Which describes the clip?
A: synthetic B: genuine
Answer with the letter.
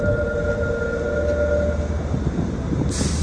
B